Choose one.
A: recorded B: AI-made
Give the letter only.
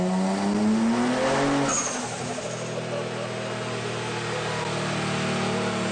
A